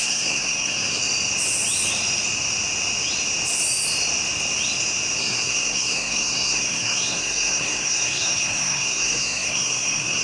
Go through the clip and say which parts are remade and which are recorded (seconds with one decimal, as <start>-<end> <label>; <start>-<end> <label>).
0.0-1.0 remade; 1.0-5.2 recorded; 5.2-10.2 remade